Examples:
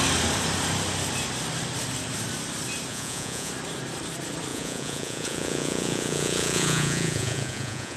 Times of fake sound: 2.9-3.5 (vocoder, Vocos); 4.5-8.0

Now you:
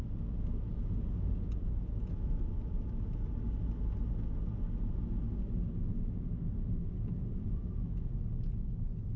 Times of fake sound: 0.7-2.3 (vocoder, Vocos); 6.8-8.1

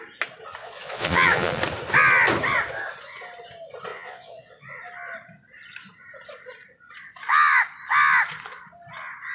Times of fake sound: 0.6-1.6 (vocoder, Vocos); 3.9-4.8

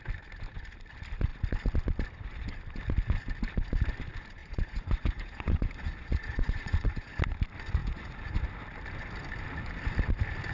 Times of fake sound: 4.4-7.2 (vocoder, Vocos); 7.8-8.4

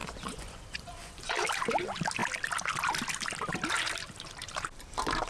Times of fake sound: 0.0-1.3 (vocoder, Vocos)